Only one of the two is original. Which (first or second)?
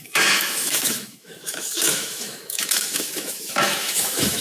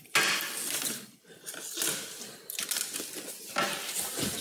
second